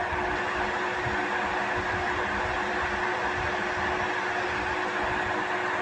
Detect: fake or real real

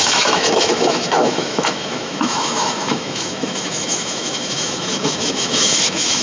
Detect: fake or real fake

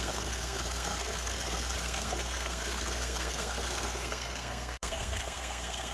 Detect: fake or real fake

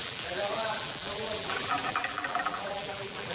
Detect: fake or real fake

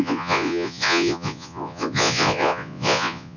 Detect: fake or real fake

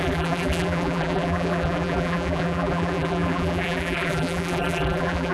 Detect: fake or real fake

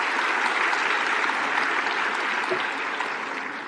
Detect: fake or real real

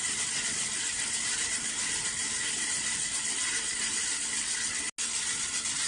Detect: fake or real real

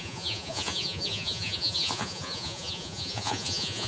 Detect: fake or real fake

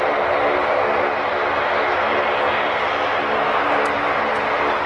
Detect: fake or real real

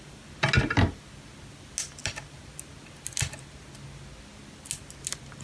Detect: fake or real real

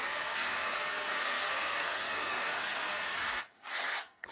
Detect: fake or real fake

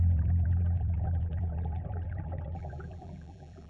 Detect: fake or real fake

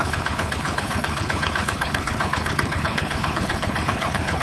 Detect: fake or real fake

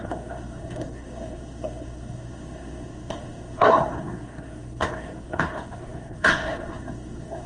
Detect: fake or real fake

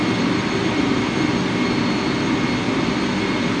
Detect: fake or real real